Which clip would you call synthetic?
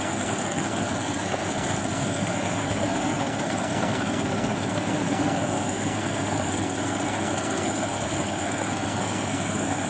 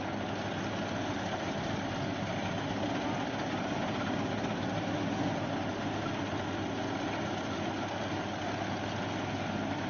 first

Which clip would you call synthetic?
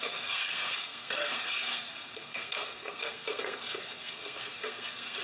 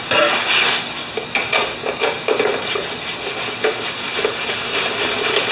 first